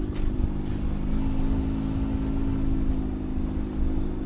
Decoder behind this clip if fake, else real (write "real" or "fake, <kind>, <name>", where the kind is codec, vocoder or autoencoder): real